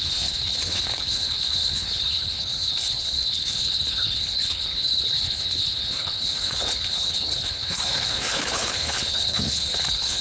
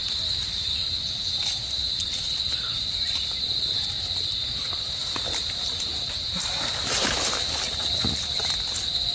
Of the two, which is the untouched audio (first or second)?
second